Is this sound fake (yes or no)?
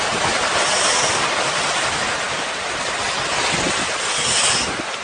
no